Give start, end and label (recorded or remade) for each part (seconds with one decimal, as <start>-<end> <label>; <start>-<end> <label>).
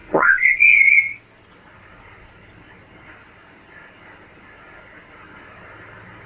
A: 0.0-0.9 remade; 0.9-6.3 recorded